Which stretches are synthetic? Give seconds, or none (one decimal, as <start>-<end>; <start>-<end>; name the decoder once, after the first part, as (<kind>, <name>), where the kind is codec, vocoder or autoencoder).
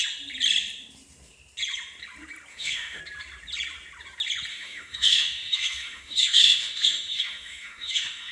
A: 2.5-3.0 (autoencoder, DAC-VAE); 4.5-8.3